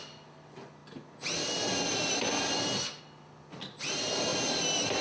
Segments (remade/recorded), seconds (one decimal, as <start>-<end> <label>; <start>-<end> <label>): 0.0-5.0 recorded